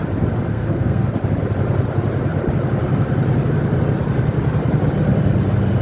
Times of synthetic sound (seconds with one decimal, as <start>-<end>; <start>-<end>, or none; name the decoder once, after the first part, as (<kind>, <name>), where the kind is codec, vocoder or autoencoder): 0.5-1.1 (codec, SNAC)